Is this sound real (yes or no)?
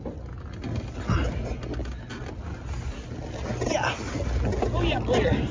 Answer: yes